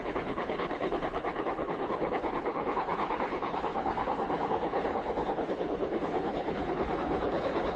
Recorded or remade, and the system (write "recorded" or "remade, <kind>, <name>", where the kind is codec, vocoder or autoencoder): remade, codec, HILCodec